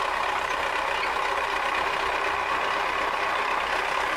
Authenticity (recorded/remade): recorded